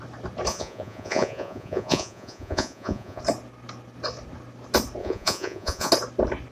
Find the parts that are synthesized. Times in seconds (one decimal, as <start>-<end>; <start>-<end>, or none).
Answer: 0.5-3.2; 5.0-5.9